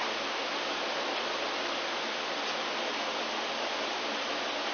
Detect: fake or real real